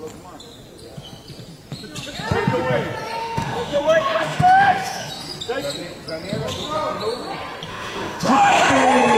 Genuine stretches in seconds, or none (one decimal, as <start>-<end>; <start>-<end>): 0.0-3.2; 5.1-7.7; 8.7-9.2